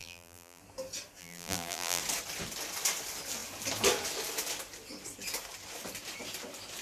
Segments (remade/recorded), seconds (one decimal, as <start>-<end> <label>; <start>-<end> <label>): 0.0-0.6 remade; 0.6-1.2 recorded; 1.2-2.0 remade; 2.0-6.8 recorded